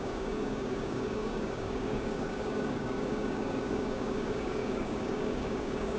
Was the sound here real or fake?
fake